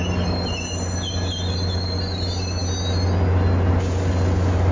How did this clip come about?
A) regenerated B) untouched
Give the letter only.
B